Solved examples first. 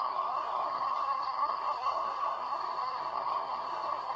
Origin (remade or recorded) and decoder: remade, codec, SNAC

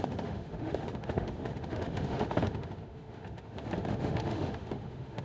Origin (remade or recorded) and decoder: remade, autoencoder, DAC-VAE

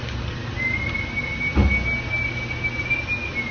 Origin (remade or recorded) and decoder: recorded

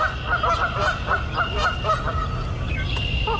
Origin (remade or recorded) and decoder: recorded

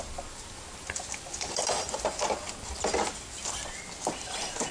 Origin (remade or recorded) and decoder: recorded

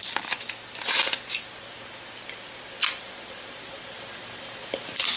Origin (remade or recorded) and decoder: recorded